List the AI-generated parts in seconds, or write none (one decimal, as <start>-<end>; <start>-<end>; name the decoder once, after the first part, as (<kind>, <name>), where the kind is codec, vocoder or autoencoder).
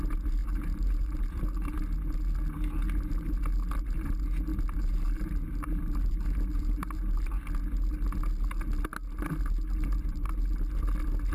0.4-1.2 (vocoder, BigVGAN v2); 4.5-7.2